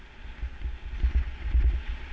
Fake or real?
real